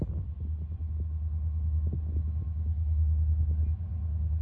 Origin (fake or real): real